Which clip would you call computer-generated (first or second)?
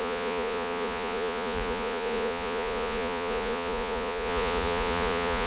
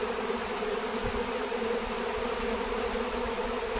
first